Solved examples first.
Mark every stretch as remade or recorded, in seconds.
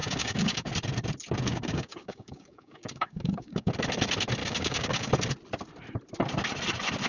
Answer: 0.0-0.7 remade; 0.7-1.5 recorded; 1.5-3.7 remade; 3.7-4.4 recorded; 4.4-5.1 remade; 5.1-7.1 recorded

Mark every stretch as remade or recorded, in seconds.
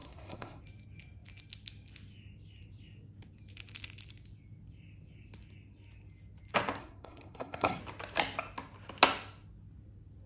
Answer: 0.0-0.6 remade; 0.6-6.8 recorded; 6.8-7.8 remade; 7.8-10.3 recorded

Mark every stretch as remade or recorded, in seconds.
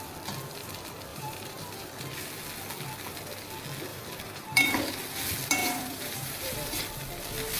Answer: 0.0-1.1 recorded; 1.1-2.0 remade; 2.0-3.9 recorded; 3.9-4.9 remade; 4.9-5.6 recorded; 5.6-6.8 remade; 6.8-7.6 recorded